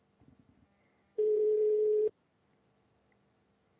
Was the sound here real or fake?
real